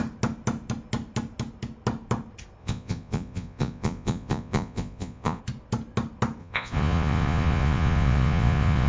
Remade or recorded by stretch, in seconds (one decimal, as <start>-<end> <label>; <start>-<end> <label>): 0.0-2.6 recorded; 2.6-5.4 remade; 5.4-6.4 recorded; 6.4-8.9 remade